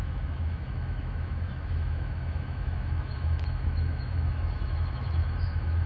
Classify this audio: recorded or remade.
remade